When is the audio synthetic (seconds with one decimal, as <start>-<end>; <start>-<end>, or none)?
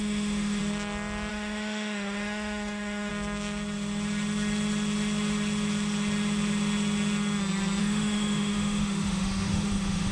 0.0-0.6; 1.3-3.1; 7.8-10.1